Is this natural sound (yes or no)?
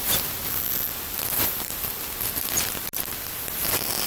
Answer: yes